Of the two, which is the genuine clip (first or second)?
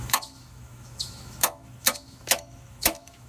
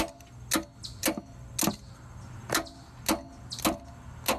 second